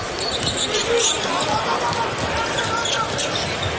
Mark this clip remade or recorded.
recorded